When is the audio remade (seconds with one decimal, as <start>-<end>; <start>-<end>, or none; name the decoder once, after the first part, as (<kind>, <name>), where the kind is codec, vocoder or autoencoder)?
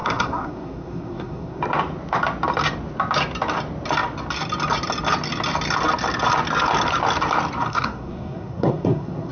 0.0-1.6 (codec, SNAC); 7.7-9.3